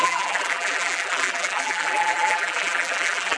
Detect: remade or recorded remade